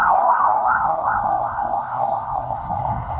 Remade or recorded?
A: remade